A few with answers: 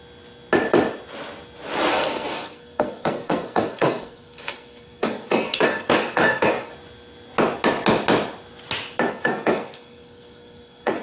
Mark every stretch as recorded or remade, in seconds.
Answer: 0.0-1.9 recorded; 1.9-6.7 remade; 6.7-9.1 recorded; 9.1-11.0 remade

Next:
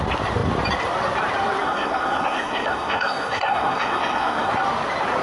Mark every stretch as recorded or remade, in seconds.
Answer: 0.0-1.6 recorded; 1.6-4.5 remade; 4.5-5.2 recorded

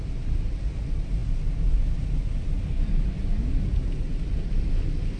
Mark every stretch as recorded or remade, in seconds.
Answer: 0.0-5.2 recorded

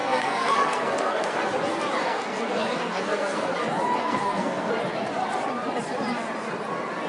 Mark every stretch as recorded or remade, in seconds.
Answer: 0.0-1.4 remade; 1.4-2.0 recorded; 2.0-3.5 remade; 3.5-4.0 recorded; 4.0-4.7 remade; 4.7-7.1 recorded

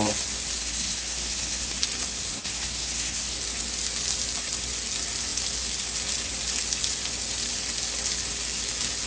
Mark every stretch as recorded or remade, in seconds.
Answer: 0.0-0.6 recorded; 0.6-1.8 remade; 1.8-2.3 recorded; 2.3-3.4 remade; 3.4-9.1 recorded

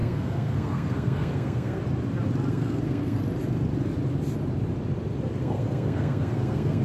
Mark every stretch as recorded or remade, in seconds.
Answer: 0.0-1.8 remade; 1.8-2.5 recorded; 2.5-3.2 remade; 3.2-5.4 recorded; 5.4-6.8 remade

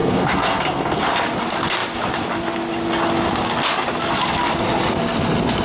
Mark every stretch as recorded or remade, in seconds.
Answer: 0.0-1.0 remade; 1.0-5.6 recorded